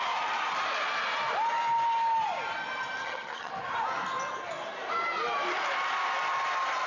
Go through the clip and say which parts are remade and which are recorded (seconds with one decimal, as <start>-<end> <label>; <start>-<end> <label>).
0.0-3.0 recorded; 3.0-3.5 remade; 3.5-6.9 recorded